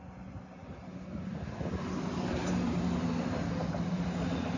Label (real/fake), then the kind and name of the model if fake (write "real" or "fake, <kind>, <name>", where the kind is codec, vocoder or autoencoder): real